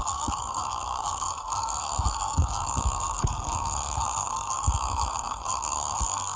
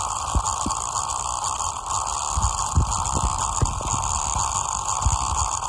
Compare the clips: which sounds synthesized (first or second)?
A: first